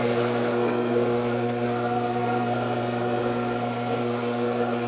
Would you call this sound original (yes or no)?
no